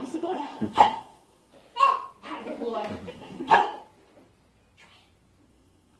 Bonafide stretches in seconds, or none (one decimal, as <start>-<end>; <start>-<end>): 1.5-3.1; 3.6-5.5